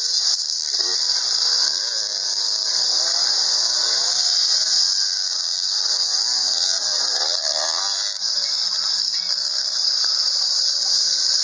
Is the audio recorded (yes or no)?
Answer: no